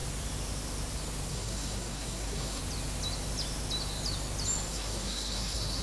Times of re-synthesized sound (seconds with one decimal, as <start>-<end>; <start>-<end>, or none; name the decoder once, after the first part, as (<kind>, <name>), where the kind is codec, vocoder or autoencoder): 1.3-2.6 (codec, SNAC); 4.7-5.8